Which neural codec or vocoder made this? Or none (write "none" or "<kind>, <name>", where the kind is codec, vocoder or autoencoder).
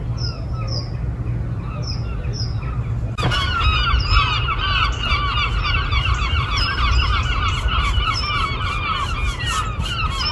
none